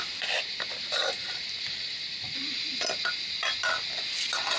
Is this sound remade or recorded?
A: recorded